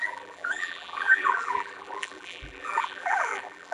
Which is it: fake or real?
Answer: fake